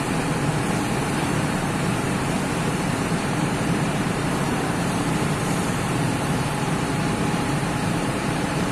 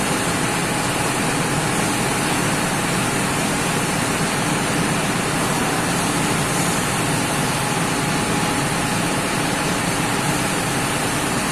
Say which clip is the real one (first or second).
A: second